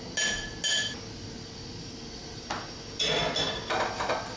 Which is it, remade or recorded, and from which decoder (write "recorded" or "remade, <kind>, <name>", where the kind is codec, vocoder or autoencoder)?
recorded